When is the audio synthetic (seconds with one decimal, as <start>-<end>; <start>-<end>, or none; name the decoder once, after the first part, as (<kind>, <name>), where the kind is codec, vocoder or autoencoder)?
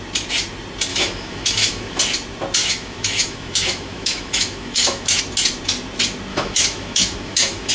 0.9-2.0 (autoencoder, DAC-VAE); 2.6-5.2; 6.3-7.7